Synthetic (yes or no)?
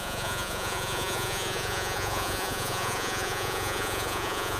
yes